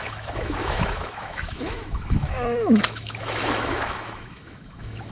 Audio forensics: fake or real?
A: fake